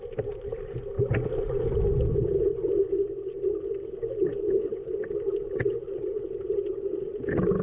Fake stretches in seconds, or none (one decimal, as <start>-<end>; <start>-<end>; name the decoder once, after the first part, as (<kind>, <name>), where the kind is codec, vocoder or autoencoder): none